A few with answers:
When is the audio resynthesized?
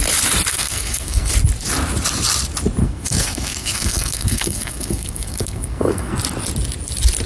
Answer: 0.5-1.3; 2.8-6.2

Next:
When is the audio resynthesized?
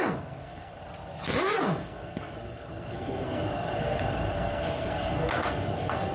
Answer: 0.0-0.8; 1.4-6.1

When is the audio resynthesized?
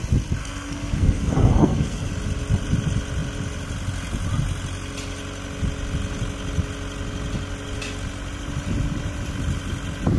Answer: 0.4-2.1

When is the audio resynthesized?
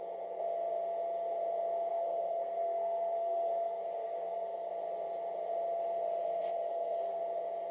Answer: 1.9-4.7; 6.2-7.2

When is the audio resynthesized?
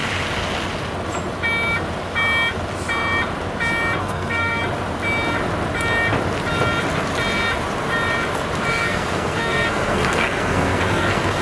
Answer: 4.0-4.6; 8.7-11.4